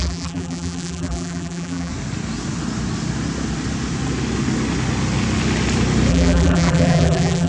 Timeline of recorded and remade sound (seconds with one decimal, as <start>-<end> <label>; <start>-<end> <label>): 0.0-1.9 remade; 1.9-6.1 recorded; 6.1-7.5 remade